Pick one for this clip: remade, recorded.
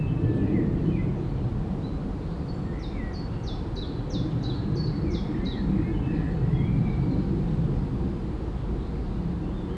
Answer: recorded